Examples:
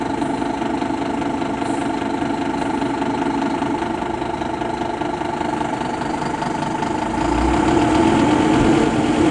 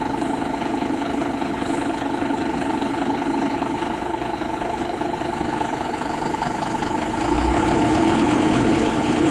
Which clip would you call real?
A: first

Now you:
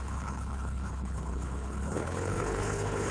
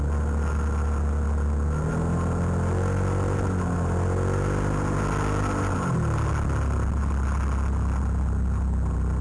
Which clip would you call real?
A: second